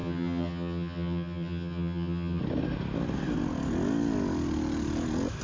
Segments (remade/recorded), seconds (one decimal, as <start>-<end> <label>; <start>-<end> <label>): 0.0-2.4 remade; 2.4-5.4 recorded

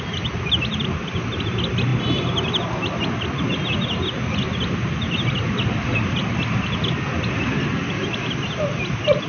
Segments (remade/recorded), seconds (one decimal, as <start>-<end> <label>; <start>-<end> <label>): 0.0-9.3 recorded

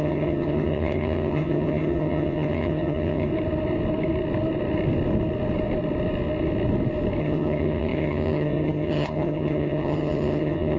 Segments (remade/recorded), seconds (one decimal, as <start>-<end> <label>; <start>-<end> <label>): 0.0-3.3 remade; 3.3-7.2 recorded; 7.2-10.8 remade

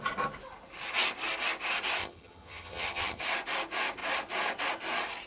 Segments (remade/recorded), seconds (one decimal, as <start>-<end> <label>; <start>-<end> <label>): 0.0-2.0 recorded; 2.0-3.2 remade; 3.2-5.3 recorded

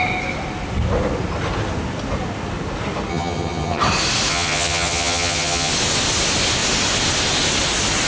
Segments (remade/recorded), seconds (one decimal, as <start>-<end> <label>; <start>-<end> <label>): 0.0-3.1 recorded; 3.1-3.8 remade; 3.8-4.3 recorded; 4.3-5.7 remade; 5.7-8.1 recorded

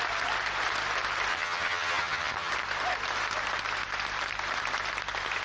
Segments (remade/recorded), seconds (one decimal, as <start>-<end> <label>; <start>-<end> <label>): 0.0-1.3 recorded; 1.3-2.5 remade; 2.5-5.4 recorded